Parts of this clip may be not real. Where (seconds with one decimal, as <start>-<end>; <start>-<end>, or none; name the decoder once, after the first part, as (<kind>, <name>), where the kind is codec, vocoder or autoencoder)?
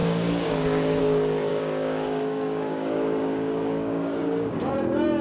0.0-1.0 (codec, DAC); 1.5-4.6